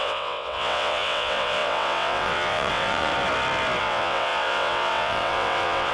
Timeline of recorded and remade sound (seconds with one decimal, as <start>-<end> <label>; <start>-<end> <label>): 0.0-3.1 remade; 3.1-3.8 recorded; 3.8-5.9 remade

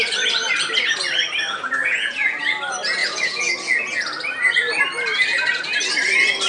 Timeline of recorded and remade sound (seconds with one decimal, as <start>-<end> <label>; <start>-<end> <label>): 0.0-1.5 recorded; 1.5-2.4 remade; 2.4-3.0 recorded; 3.0-3.5 remade; 3.5-6.5 recorded